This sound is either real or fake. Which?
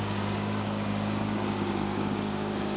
fake